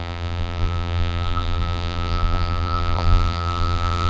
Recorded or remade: remade